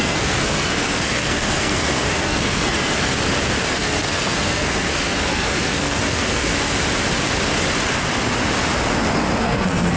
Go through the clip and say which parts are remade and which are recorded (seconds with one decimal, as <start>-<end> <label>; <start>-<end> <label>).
0.0-3.1 remade; 3.1-3.7 recorded; 3.7-6.5 remade; 6.5-9.4 recorded; 9.4-10.0 remade